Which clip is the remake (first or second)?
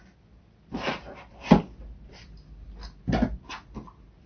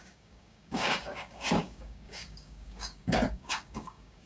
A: second